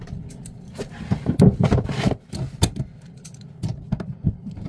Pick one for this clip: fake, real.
real